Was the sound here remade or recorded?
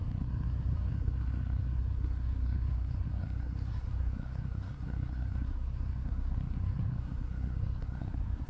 remade